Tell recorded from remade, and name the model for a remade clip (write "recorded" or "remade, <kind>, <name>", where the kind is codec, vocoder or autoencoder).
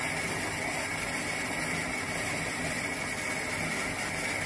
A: recorded